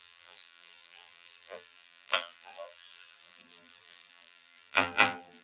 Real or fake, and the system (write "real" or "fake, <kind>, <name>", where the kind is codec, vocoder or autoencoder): fake, vocoder, BigVGAN v2